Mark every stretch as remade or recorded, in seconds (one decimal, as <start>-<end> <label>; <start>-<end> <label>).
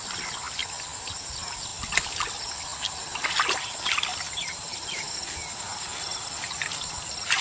0.0-1.7 recorded; 1.7-2.3 remade; 2.3-2.7 recorded; 2.7-5.6 remade; 5.6-7.4 recorded